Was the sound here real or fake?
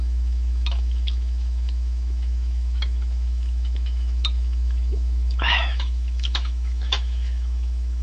fake